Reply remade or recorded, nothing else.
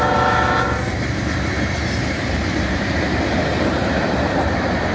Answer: remade